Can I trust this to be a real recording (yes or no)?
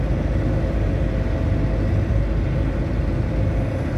yes